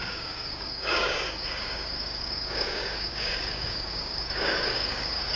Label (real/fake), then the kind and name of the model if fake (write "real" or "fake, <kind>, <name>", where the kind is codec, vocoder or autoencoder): fake, codec, DAC